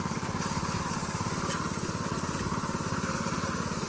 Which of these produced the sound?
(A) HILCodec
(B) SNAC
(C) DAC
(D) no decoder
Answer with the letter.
D